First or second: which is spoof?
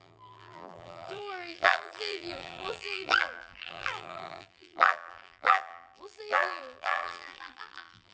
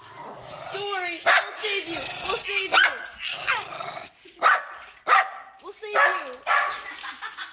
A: first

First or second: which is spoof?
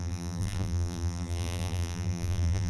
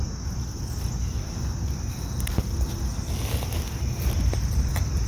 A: first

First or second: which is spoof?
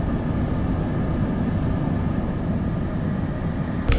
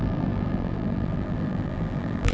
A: second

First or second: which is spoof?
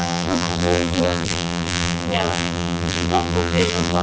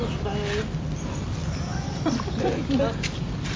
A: first